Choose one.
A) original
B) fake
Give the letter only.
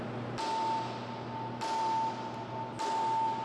A